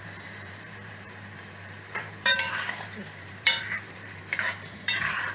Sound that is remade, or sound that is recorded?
remade